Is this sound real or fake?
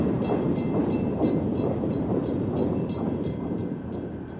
fake